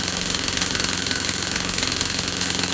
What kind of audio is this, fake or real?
fake